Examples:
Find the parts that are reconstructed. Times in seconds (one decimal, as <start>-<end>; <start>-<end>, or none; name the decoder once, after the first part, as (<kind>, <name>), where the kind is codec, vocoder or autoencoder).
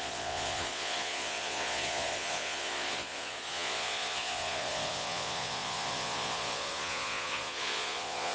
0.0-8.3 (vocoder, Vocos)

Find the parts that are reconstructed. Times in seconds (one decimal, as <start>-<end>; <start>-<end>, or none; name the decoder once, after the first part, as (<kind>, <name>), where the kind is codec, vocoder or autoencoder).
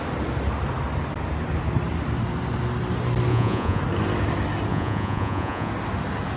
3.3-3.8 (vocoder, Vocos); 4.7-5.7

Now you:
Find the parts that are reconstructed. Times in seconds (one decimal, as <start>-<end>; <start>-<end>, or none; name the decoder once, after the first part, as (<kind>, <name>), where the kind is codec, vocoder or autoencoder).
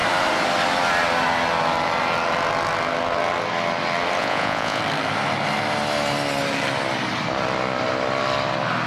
4.2-4.8 (vocoder, Vocos)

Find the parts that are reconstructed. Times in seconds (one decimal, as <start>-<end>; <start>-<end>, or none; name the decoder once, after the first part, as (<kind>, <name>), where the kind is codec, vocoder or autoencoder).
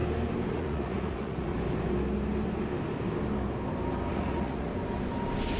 0.5-1.5 (vocoder, Vocos); 4.1-4.7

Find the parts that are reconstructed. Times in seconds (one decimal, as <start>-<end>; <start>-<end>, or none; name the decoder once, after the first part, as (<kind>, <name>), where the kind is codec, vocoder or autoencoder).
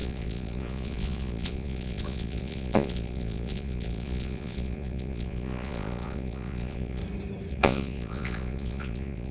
0.0-7.0 (vocoder, Vocos); 7.5-9.3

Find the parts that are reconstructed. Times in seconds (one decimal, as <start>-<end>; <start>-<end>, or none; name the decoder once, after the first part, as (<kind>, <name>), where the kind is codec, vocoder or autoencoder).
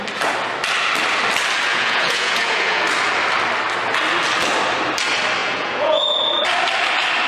1.7-2.8 (vocoder, Vocos); 5.4-6.2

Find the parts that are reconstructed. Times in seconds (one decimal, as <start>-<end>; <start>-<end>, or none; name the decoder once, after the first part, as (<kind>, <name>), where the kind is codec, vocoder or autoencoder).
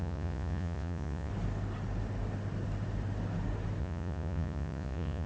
0.0-1.3 (vocoder, Vocos); 3.8-5.3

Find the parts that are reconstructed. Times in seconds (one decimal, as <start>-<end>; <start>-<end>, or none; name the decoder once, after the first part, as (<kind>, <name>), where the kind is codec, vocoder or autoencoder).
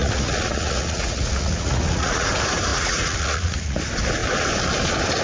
0.0-2.3 (vocoder, Vocos); 2.7-3.8